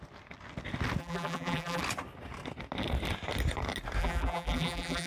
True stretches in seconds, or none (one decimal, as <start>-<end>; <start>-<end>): 0.0-1.0; 1.8-4.0